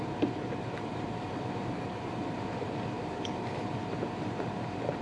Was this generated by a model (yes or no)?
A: yes